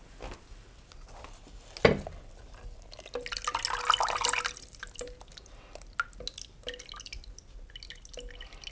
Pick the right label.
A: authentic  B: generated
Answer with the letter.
A